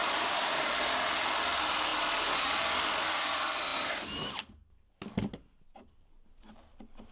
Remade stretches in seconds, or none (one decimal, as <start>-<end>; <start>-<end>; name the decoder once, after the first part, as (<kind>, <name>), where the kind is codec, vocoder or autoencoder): 0.0-0.7 (vocoder, BigVGAN v2)